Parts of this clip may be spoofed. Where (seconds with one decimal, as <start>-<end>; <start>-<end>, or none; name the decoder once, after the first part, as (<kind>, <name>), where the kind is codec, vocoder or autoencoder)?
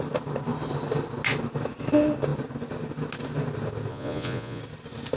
3.9-4.6 (vocoder, Vocos)